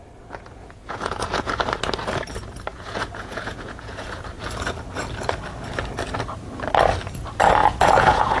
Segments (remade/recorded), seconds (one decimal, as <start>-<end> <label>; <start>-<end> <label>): 0.0-0.6 recorded; 0.6-1.5 remade; 1.5-2.7 recorded; 2.7-4.2 remade; 4.2-7.6 recorded; 7.6-8.4 remade